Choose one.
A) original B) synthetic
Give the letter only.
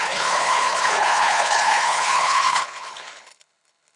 B